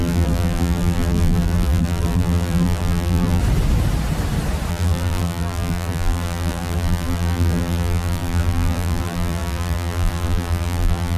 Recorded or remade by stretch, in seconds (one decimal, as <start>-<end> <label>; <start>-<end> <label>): 0.0-3.4 remade; 3.4-4.7 recorded; 4.7-11.2 remade